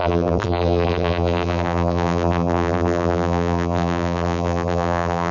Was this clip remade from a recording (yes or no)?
yes